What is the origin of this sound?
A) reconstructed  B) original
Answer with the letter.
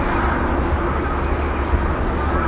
B